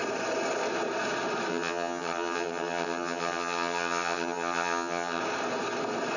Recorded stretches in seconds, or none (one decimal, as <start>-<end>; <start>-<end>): 0.0-1.5; 5.2-6.2